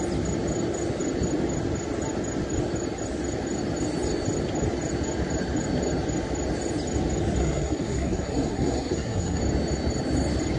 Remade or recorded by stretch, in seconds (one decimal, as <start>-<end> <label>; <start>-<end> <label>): 0.0-7.4 recorded; 7.4-9.4 remade; 9.4-10.6 recorded